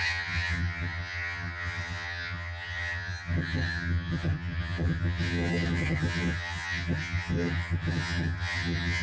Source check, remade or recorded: remade